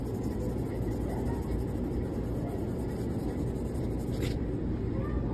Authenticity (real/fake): real